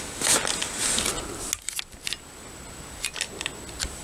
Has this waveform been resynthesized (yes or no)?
no